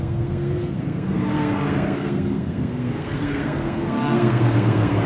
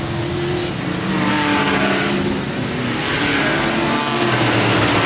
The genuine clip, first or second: second